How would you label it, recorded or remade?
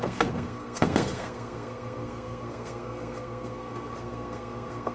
remade